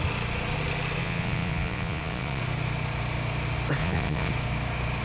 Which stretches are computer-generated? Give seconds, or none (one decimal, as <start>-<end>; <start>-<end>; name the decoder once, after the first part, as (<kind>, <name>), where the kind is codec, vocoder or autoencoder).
1.0-2.4 (vocoder, Vocos); 3.8-4.3

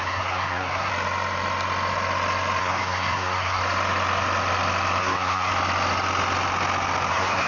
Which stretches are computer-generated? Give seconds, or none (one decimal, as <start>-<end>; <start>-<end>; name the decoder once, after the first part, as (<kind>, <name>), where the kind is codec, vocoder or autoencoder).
0.0-0.9 (codec, SNAC); 2.6-3.6; 5.0-5.5; 7.1-7.5

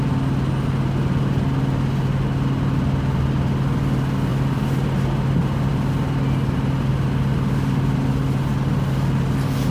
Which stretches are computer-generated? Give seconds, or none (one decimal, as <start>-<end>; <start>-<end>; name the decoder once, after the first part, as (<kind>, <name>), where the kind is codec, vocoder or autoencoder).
none

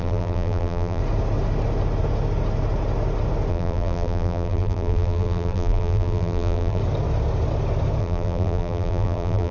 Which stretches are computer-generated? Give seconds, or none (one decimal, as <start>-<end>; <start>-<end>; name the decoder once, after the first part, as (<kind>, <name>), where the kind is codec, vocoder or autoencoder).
0.0-1.0 (vocoder, BigVGAN v2); 3.5-6.8; 8.0-9.5

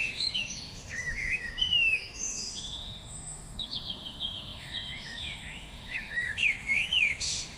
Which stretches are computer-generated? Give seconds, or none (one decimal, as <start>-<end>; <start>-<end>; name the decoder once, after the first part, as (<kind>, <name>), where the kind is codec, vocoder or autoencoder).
0.0-7.6 (autoencoder, DAC-VAE)

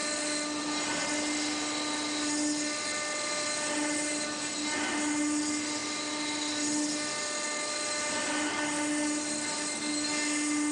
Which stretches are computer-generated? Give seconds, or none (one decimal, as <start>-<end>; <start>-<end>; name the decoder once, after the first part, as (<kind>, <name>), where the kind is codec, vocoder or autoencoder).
none

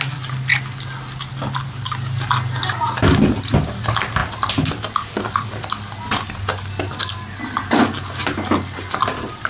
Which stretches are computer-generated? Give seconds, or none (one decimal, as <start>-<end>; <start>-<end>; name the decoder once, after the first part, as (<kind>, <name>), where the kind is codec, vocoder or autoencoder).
none